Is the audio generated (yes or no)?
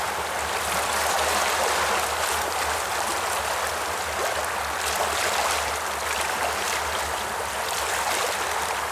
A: no